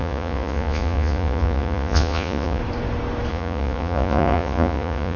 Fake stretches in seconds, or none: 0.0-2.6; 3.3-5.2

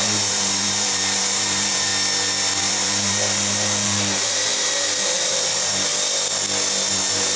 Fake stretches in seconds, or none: 0.0-1.9; 2.6-5.9; 6.9-7.4

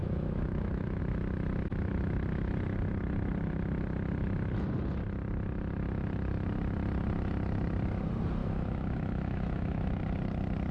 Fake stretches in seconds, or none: 0.0-1.0; 8.4-10.0

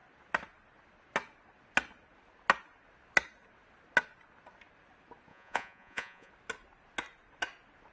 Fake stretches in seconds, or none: 5.3-6.3

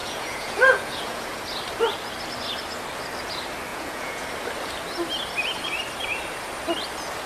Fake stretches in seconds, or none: 0.0-1.4; 3.7-4.3

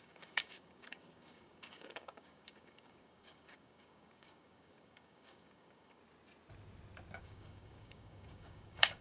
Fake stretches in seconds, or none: 0.0-6.0; 7.2-9.0